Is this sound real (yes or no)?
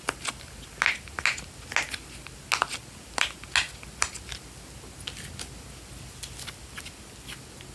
yes